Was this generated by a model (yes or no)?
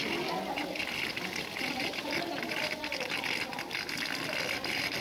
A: no